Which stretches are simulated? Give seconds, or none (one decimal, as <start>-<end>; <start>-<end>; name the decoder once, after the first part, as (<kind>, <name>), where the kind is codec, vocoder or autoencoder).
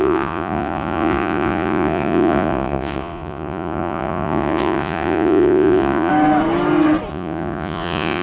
0.0-6.1 (vocoder, Vocos); 7.1-8.2